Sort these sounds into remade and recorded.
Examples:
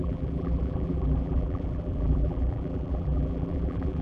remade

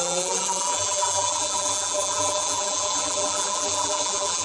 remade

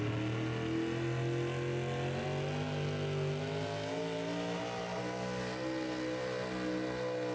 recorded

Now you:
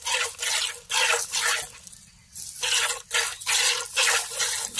recorded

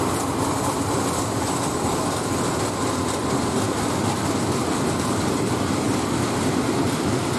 recorded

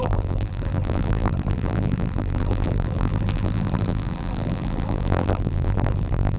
remade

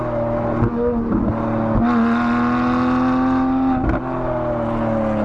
recorded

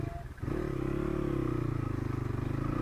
recorded